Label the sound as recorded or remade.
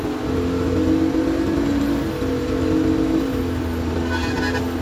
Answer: recorded